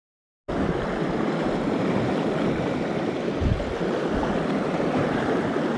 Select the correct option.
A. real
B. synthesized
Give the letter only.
A